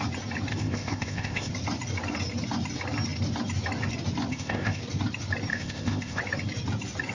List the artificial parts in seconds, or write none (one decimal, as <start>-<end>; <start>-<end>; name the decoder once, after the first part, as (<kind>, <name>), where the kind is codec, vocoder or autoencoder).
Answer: 0.5-1.5 (codec, ZipCodec); 4.3-4.8; 5.5-6.2